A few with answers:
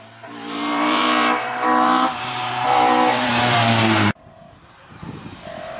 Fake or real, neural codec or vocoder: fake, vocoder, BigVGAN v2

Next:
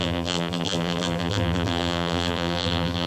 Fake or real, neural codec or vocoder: fake, vocoder, BigVGAN v2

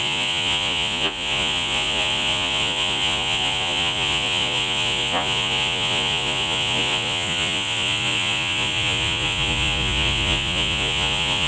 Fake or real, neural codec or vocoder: fake, vocoder, Vocos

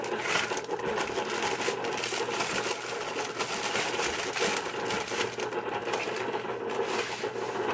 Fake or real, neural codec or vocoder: real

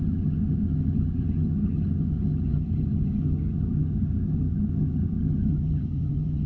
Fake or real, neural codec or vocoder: fake, vocoder, HiFi-GAN